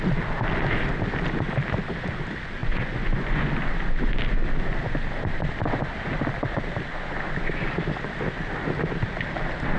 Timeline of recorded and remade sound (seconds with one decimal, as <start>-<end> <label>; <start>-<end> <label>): 0.0-2.6 recorded; 2.6-3.5 remade; 3.5-9.8 recorded